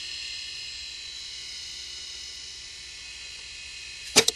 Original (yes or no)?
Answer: no